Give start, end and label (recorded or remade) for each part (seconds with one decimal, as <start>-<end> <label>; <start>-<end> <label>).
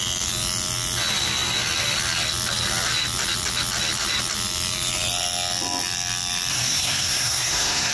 0.0-6.5 recorded; 6.5-7.9 remade